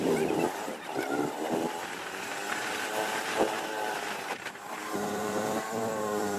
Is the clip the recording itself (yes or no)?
no